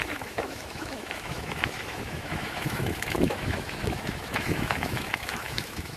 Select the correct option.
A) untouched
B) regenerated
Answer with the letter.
B